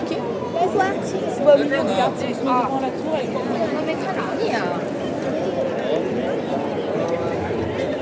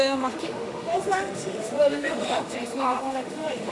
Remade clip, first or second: second